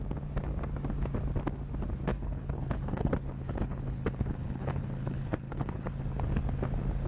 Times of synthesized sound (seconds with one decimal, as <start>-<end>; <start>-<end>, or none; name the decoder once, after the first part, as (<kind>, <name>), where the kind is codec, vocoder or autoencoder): 2.1-6.0 (codec, HILCodec)